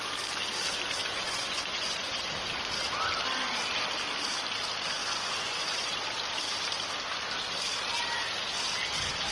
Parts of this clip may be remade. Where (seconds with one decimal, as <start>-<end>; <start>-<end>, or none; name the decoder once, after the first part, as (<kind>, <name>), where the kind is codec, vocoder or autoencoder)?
1.0-2.3 (vocoder, Vocos); 5.0-5.9